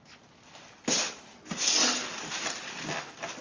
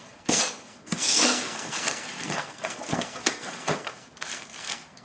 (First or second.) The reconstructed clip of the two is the second